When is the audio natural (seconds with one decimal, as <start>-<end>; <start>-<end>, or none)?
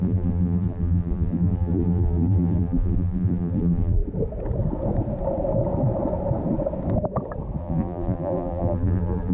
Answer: 4.0-7.6